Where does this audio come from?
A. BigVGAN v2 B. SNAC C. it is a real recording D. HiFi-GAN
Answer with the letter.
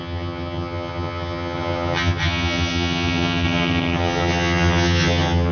D